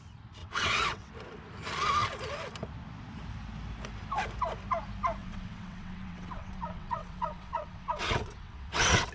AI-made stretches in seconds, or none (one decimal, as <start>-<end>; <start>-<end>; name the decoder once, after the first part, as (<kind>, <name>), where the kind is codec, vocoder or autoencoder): 0.4-1.1 (vocoder, WaveNeXt); 5.2-9.1